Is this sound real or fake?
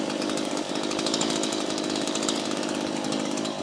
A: fake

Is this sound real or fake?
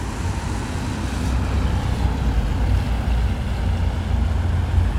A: real